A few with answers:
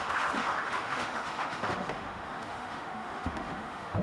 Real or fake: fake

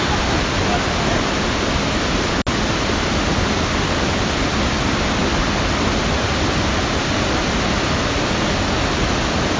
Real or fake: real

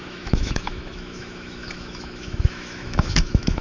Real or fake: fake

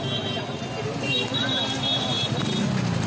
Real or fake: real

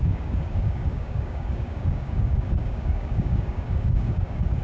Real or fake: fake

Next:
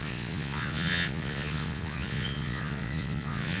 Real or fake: fake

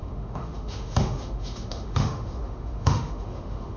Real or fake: fake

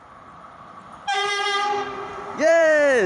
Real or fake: fake